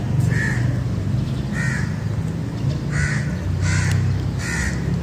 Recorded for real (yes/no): yes